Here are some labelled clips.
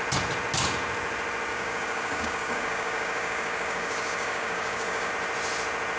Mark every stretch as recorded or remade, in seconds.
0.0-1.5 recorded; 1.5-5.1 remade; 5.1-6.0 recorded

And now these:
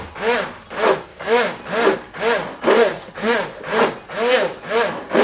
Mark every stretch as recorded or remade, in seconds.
0.0-1.1 recorded; 1.1-1.6 remade; 1.6-5.2 recorded